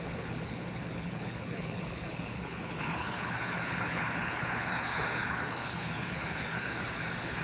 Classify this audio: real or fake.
fake